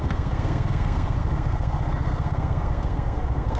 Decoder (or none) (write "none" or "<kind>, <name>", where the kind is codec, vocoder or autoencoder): codec, SNAC